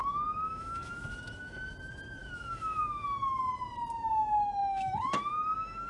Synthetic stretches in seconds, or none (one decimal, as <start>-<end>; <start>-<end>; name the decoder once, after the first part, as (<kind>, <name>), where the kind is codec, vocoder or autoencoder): 0.0-1.7 (autoencoder, DAC-VAE); 2.2-3.4; 4.6-5.9

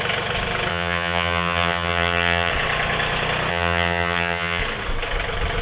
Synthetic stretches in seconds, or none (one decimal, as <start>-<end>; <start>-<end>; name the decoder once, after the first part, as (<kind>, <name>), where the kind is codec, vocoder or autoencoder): 0.7-2.5 (vocoder, HiFi-GAN); 3.5-4.6

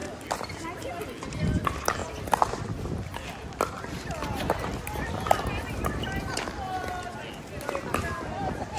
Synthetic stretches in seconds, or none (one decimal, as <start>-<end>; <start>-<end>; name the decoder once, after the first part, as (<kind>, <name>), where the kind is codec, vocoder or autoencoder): none

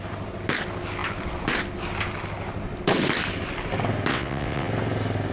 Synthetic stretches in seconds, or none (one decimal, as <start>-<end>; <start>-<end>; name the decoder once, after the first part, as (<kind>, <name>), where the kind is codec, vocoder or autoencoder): 4.1-4.7 (vocoder, WaveNeXt)